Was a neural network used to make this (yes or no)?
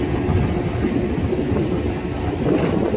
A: no